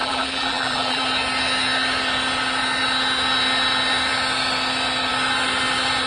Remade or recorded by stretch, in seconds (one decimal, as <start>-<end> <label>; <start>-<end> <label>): 0.0-1.0 remade; 1.0-6.1 recorded